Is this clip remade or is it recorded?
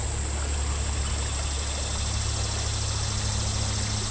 recorded